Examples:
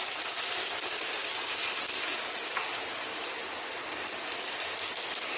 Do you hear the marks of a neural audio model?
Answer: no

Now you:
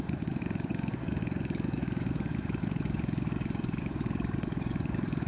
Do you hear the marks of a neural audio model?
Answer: yes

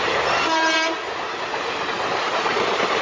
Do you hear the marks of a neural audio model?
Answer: yes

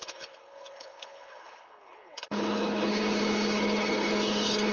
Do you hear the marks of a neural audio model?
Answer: yes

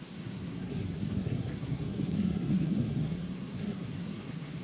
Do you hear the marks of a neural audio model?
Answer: yes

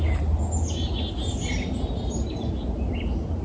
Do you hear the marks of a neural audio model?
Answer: no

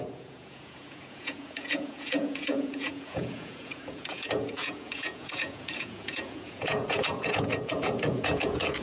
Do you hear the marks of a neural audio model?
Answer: yes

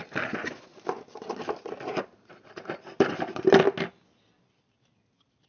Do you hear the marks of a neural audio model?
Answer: no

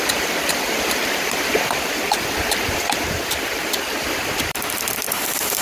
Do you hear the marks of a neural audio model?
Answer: yes